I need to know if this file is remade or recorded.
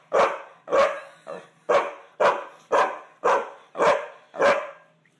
recorded